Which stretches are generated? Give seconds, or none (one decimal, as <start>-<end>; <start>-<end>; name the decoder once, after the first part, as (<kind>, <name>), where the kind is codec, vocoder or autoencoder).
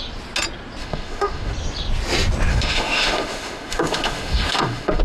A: 0.8-1.5 (autoencoder, DAC-VAE); 2.5-5.0